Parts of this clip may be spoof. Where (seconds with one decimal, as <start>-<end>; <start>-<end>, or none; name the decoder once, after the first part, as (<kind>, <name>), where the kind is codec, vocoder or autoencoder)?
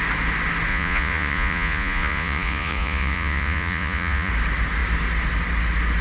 0.7-4.3 (vocoder, Vocos)